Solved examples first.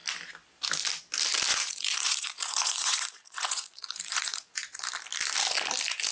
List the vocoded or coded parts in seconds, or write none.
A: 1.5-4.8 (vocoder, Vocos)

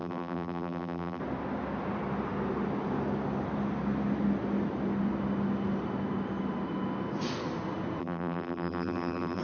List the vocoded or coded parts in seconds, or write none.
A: 0.0-1.2 (vocoder, BigVGAN v2); 8.0-9.4

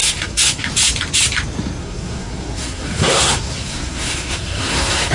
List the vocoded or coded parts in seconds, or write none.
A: 0.0-0.7 (codec, SNAC); 1.8-5.1

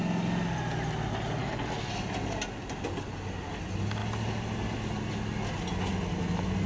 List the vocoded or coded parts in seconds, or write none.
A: 1.4-1.9 (codec, SNAC)